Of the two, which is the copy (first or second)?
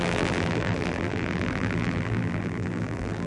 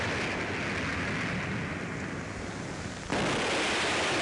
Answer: first